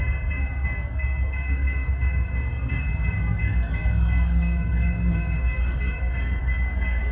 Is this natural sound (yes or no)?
no